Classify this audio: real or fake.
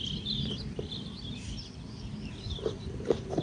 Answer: real